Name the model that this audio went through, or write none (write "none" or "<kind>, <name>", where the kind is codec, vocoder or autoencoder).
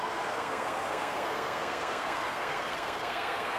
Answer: codec, SNAC